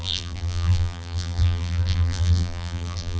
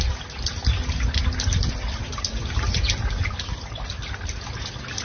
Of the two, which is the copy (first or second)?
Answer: first